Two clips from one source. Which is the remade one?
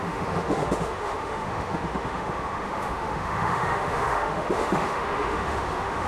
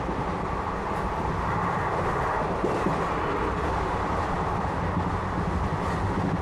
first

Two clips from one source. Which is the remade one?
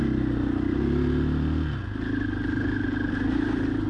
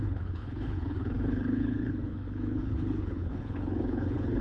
second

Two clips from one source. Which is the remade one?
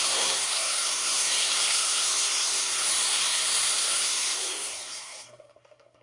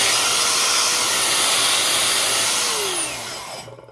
first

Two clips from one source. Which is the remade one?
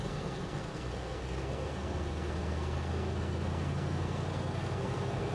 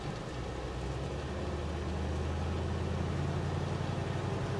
first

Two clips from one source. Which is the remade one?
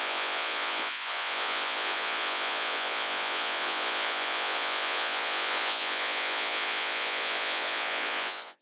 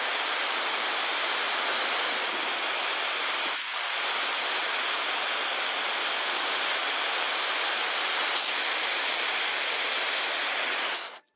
first